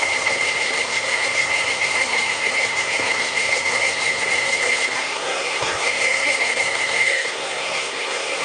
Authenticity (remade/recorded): remade